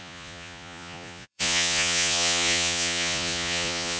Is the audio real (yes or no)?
no